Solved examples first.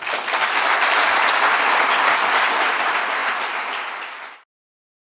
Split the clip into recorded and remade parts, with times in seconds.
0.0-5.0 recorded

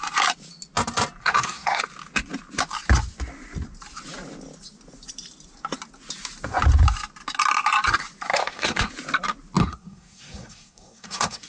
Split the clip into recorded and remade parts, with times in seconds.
0.0-1.2 recorded; 1.2-1.8 remade; 1.8-8.3 recorded; 8.3-8.9 remade; 8.9-9.6 recorded; 9.6-11.5 remade

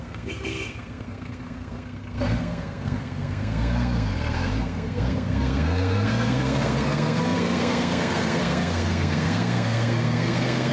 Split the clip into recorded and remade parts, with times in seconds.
0.0-10.7 remade

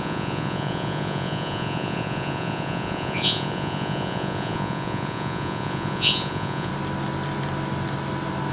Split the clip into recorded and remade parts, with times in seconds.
0.0-6.7 remade; 6.7-8.5 recorded

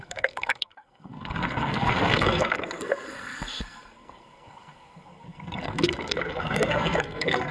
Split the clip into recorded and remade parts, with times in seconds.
0.0-7.5 remade

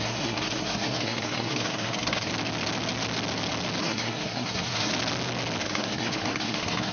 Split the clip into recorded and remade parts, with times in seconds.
0.0-2.3 remade; 2.3-3.8 recorded; 3.8-4.9 remade; 4.9-5.6 recorded; 5.6-6.9 remade

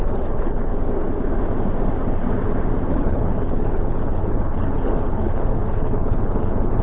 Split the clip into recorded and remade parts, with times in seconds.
0.0-0.7 remade; 0.7-2.9 recorded; 2.9-6.8 remade